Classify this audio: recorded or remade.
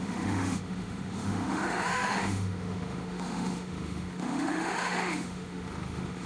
remade